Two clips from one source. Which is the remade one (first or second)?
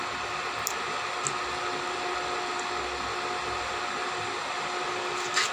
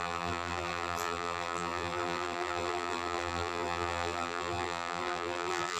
second